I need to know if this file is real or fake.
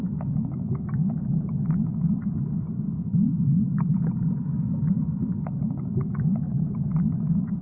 fake